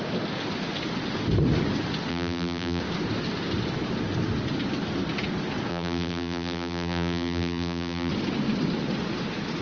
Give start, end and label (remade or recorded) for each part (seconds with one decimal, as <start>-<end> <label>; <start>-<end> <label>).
0.0-2.1 recorded; 2.1-2.8 remade; 2.8-5.7 recorded; 5.7-8.1 remade; 8.1-9.6 recorded